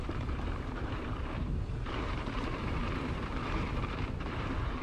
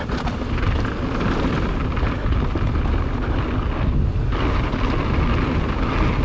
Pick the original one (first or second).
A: second